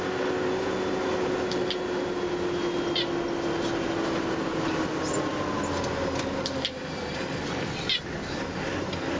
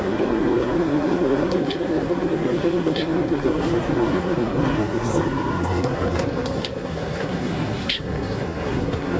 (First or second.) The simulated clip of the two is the second